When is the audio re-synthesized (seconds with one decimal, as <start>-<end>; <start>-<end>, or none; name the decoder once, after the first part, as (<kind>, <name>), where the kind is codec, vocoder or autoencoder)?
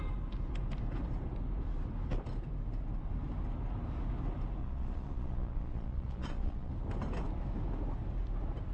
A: 4.6-6.7 (vocoder, Vocos)